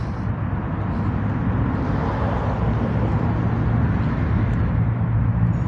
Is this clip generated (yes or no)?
no